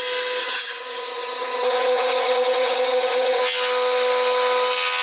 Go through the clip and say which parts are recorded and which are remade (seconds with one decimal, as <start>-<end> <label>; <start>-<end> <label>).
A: 0.0-0.4 recorded; 0.4-3.4 remade; 3.4-5.0 recorded